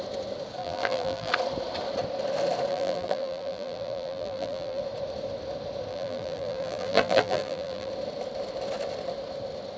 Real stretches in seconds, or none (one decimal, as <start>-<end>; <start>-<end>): 0.0-0.6; 1.3-2.7; 4.8-5.9; 7.9-9.8